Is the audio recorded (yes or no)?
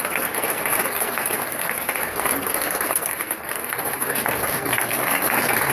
no